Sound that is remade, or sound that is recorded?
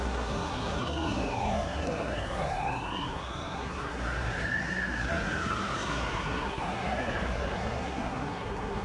remade